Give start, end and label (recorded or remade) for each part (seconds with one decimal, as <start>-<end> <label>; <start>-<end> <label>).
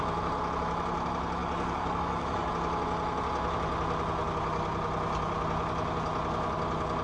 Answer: 0.0-1.4 recorded; 1.4-2.5 remade; 2.5-7.0 recorded